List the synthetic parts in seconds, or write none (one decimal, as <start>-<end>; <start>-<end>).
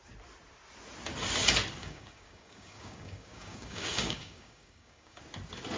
1.8-5.2